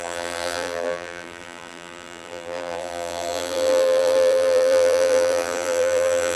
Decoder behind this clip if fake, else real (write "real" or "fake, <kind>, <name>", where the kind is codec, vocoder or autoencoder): fake, vocoder, BigVGAN v2